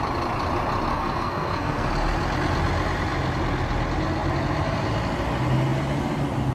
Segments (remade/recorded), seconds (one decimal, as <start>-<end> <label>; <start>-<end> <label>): 0.0-0.9 recorded; 0.9-1.9 remade; 1.9-6.5 recorded